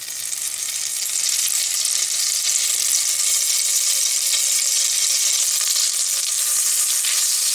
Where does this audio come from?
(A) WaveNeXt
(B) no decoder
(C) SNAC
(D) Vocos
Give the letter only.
B